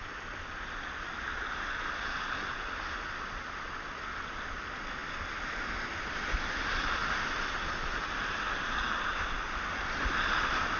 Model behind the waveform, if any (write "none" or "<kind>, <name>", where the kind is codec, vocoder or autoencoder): none